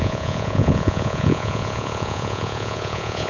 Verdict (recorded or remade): remade